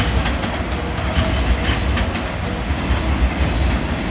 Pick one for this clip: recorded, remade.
recorded